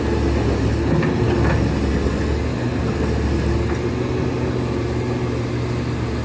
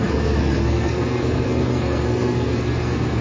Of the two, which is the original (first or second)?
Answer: first